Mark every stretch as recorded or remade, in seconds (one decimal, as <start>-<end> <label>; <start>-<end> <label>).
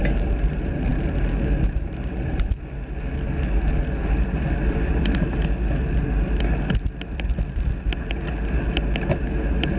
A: 0.0-9.8 recorded